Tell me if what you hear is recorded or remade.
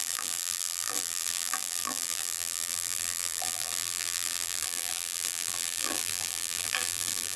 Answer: remade